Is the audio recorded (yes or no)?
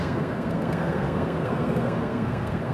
no